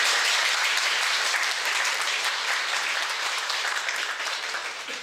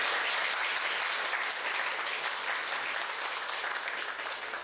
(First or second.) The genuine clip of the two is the second